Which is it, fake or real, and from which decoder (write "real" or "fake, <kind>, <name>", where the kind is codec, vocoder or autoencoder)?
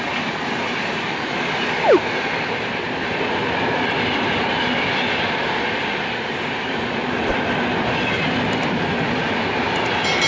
real